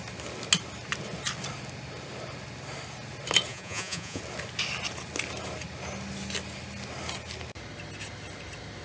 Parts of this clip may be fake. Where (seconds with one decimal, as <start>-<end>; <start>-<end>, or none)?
3.5-4.2